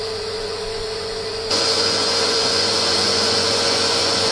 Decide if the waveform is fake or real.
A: fake